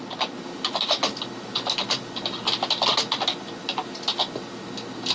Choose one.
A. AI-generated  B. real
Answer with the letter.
B